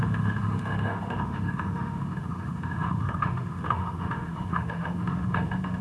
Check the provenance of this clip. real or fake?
fake